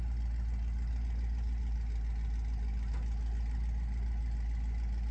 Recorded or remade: recorded